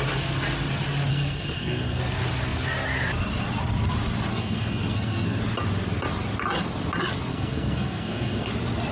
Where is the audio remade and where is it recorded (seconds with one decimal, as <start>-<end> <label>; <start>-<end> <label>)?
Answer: 0.0-1.1 recorded; 1.1-2.0 remade; 2.0-4.3 recorded; 4.3-5.4 remade; 5.4-7.3 recorded; 7.3-8.5 remade; 8.5-8.9 recorded